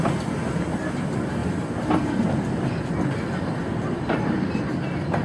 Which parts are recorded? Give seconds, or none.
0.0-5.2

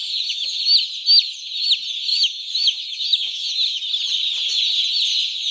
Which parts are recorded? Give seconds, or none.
0.6-2.1; 3.9-5.5

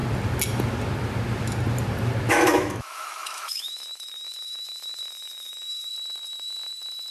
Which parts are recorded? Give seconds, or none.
0.0-2.3; 5.9-7.1

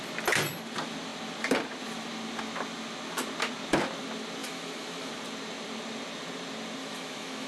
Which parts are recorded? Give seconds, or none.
0.0-4.4; 5.1-6.8

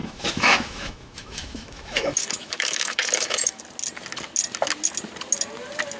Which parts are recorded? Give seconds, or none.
3.6-6.0

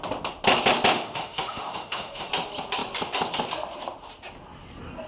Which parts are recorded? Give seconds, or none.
0.0-0.9; 2.3-5.1